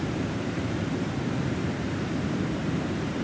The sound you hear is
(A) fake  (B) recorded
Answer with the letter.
A